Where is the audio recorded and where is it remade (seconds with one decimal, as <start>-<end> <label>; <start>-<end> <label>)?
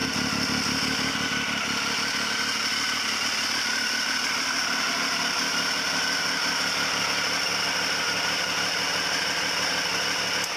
0.0-10.6 recorded